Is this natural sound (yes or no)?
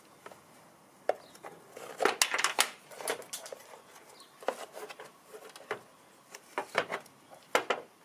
yes